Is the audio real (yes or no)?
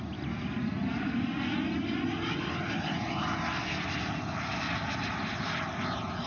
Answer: yes